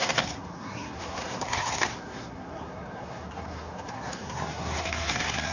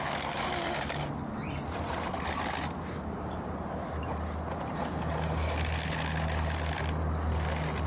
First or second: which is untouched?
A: second